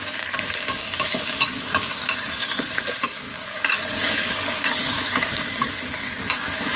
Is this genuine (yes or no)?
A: no